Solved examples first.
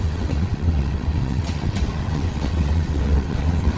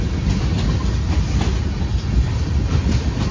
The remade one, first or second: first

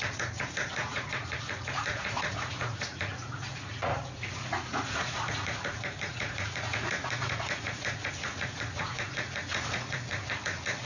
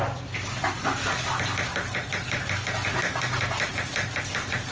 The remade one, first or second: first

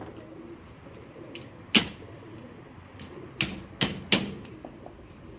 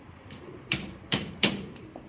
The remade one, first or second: second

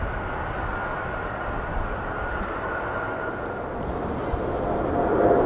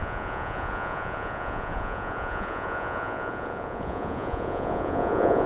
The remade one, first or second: second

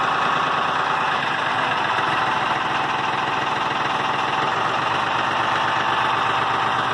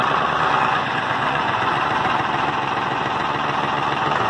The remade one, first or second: second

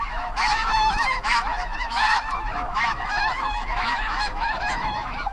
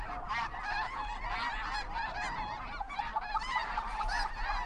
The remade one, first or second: first